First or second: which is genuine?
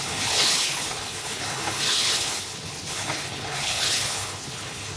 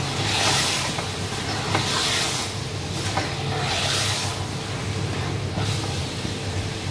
second